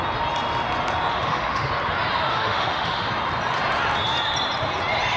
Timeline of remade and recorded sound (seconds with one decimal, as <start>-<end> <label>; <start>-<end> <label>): 0.0-1.1 recorded; 1.1-1.7 remade; 1.7-2.3 recorded; 2.3-3.1 remade; 3.1-5.2 recorded